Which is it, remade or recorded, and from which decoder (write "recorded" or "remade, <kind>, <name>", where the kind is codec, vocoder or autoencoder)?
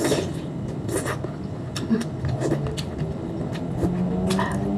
recorded